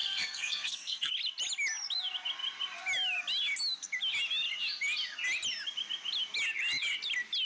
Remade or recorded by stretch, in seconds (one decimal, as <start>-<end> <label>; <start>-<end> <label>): 0.0-1.1 remade; 1.1-7.4 recorded